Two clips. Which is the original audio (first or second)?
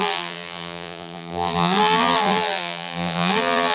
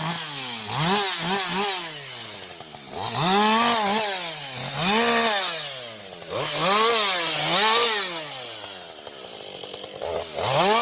second